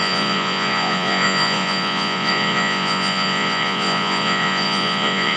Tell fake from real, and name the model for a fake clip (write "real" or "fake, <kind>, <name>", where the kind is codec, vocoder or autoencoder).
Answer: fake, vocoder, Vocos